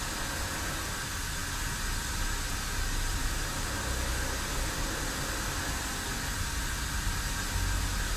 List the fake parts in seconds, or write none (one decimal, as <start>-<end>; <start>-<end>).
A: none